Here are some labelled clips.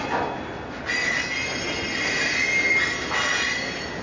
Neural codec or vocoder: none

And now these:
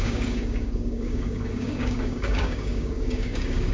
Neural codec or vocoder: codec, DAC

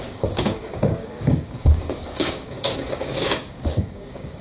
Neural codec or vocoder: codec, DAC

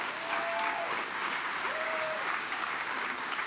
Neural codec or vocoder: codec, DAC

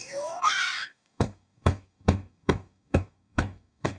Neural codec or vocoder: codec, DAC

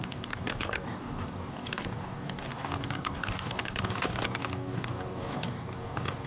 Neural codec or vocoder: codec, DAC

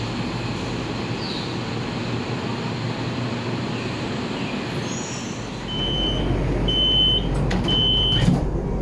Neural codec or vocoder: none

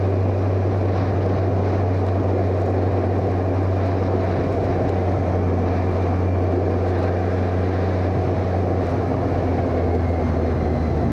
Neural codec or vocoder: none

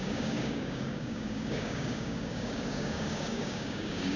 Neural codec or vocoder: codec, DAC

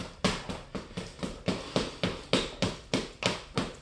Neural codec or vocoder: none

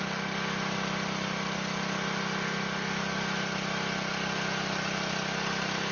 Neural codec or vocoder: none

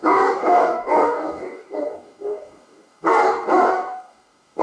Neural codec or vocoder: codec, DAC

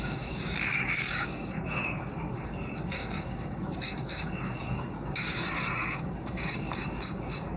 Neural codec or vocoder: codec, DAC